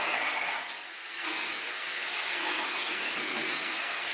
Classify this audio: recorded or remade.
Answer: remade